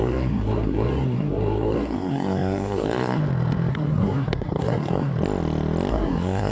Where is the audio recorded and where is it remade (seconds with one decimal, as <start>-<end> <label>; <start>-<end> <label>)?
0.0-3.2 remade; 3.2-3.7 recorded; 3.7-5.1 remade; 5.1-5.9 recorded; 5.9-6.5 remade